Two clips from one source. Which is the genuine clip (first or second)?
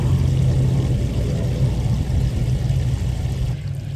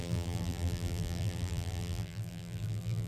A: first